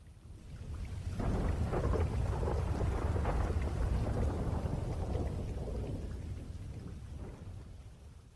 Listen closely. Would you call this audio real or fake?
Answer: real